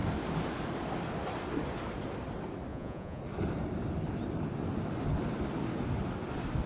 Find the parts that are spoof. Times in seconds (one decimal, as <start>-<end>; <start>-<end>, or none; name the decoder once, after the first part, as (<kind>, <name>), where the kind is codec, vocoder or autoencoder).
2.7-3.2 (vocoder, Vocos)